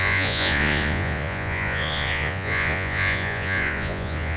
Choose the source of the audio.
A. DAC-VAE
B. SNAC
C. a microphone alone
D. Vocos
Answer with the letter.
D